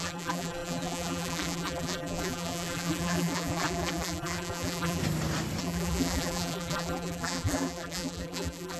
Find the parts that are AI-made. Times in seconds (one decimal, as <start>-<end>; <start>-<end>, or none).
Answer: 0.0-5.0; 5.6-8.8